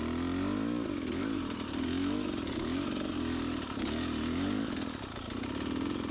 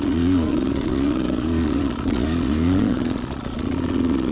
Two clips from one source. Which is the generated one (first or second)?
second